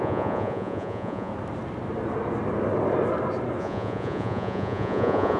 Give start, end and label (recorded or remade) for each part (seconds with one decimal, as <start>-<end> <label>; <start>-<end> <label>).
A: 0.0-1.3 remade; 1.3-3.6 recorded; 3.6-5.4 remade